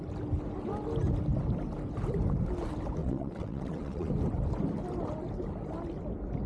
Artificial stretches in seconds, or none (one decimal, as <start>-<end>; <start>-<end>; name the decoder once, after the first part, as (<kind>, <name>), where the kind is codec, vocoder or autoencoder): 3.0-4.1 (vocoder, WaveNeXt)